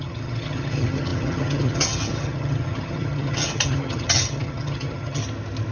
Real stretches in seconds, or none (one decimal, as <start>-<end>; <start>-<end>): 5.2-5.7